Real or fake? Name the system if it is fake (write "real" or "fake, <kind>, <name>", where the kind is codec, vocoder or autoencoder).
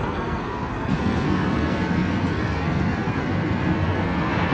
fake, codec, SNAC